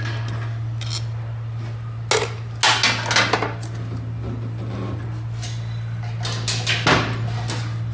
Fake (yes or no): no